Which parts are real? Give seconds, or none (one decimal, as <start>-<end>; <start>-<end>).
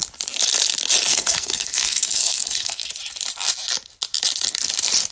0.0-1.1; 2.9-5.1